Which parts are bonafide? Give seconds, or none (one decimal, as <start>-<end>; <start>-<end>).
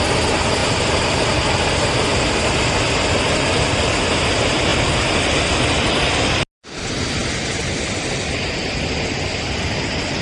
0.0-0.6; 1.2-10.2